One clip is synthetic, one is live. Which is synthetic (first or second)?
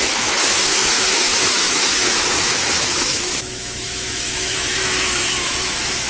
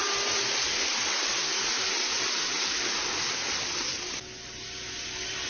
first